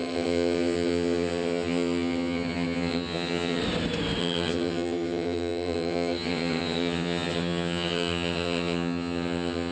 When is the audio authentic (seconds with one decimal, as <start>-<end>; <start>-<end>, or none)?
3.6-4.2